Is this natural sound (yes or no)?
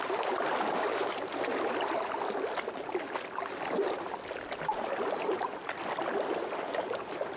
yes